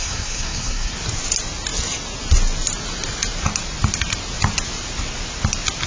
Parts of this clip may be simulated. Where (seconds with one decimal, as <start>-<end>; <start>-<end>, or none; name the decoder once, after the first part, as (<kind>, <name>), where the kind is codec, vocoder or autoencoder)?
0.0-0.9 (codec, SNAC)